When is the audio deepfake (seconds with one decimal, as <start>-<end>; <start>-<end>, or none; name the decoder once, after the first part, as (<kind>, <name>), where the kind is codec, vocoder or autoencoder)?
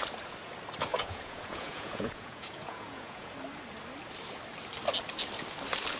0.9-3.3 (vocoder, Vocos)